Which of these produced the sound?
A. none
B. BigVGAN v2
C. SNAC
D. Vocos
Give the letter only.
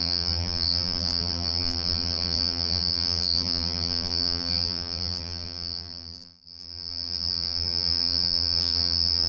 B